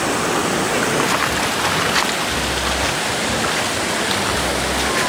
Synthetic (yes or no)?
no